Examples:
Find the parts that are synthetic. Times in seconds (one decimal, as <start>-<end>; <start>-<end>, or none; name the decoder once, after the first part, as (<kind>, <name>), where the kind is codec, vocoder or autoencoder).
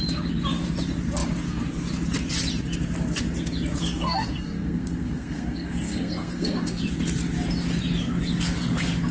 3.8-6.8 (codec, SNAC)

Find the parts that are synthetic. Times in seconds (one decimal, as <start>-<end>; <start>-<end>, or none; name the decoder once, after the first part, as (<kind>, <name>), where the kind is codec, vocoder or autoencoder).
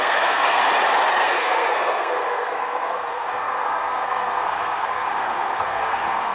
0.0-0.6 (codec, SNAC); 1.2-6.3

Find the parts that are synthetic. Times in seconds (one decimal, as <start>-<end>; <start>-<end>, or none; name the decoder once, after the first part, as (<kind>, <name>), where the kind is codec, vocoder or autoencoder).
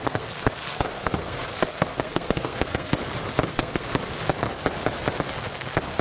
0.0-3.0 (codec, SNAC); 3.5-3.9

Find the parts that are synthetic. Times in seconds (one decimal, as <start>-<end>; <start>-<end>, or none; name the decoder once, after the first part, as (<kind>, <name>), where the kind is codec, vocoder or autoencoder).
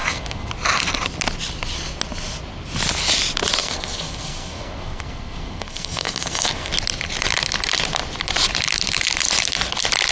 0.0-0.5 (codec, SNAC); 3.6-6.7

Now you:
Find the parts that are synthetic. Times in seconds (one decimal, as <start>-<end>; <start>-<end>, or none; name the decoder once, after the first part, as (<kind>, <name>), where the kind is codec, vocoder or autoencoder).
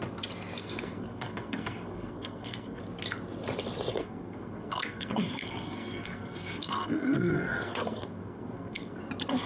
0.6-2.8 (codec, SNAC); 3.9-9.0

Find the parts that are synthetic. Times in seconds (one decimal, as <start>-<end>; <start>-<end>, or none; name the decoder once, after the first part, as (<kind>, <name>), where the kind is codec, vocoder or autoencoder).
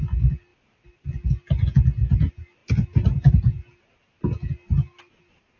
none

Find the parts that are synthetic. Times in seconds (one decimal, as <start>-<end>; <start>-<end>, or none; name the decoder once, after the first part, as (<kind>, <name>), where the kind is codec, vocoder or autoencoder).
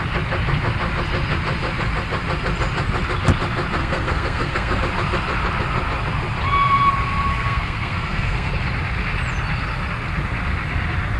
3.8-4.8 (codec, SNAC); 7.3-8.5